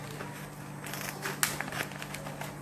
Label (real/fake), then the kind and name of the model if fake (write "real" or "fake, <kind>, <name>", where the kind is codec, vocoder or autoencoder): real